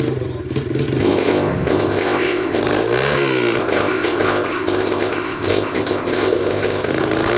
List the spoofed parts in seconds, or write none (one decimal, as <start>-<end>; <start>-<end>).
1.0-2.6; 3.6-6.9